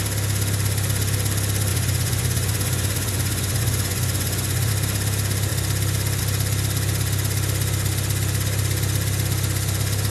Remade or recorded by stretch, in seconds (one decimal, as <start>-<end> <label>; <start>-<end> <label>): 0.0-1.7 recorded; 1.7-4.7 remade; 4.7-10.1 recorded